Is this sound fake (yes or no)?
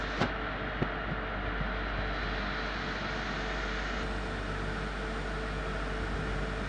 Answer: no